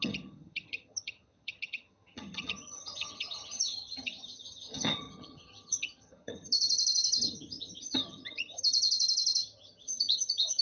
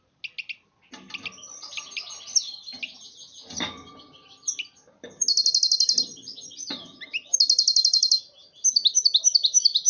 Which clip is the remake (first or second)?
first